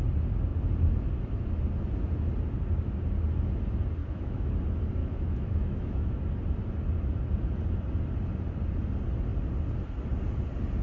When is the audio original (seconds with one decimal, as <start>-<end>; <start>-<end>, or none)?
0.0-4.0; 4.5-5.0; 6.2-10.8